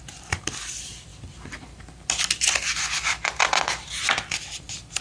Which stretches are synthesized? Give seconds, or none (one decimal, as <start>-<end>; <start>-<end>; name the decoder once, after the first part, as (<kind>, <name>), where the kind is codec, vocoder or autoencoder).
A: 0.0-1.1 (vocoder, BigVGAN v2); 4.1-5.0